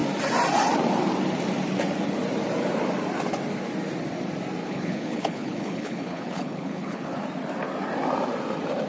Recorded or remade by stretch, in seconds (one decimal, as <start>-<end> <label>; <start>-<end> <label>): 0.0-4.6 recorded; 4.6-7.2 remade; 7.2-8.9 recorded